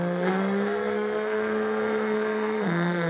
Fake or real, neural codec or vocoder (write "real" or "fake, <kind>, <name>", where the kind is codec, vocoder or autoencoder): fake, codec, SNAC